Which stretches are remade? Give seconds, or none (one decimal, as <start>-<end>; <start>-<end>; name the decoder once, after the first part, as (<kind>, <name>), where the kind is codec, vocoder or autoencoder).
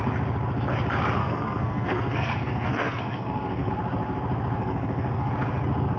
1.2-3.7 (codec, SNAC); 4.6-5.3